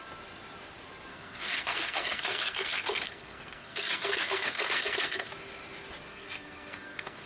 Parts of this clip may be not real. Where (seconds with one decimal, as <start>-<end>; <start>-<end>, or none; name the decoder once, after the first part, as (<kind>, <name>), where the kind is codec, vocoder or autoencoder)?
1.1-5.3 (codec, SNAC); 6.1-7.3